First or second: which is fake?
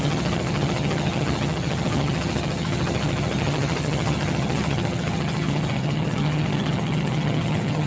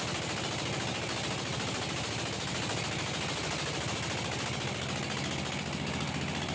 first